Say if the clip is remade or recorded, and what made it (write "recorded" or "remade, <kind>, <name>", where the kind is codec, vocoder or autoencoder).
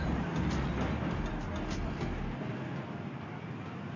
recorded